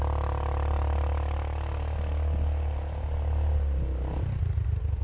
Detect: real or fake real